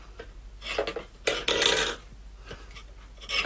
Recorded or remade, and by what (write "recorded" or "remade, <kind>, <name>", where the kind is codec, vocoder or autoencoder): recorded